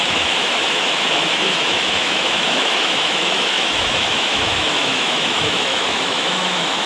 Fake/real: fake